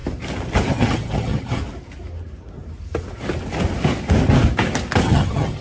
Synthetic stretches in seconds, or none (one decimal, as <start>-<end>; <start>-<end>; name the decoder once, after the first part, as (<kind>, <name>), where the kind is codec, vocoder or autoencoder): 0.7-1.6 (vocoder, HiFi-GAN); 5.0-5.6